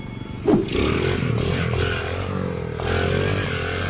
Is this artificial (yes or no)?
no